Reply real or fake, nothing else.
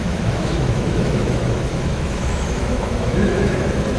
fake